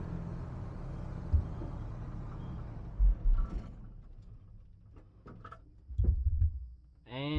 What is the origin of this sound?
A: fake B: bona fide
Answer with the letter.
B